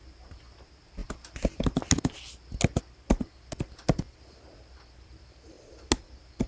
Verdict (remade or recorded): recorded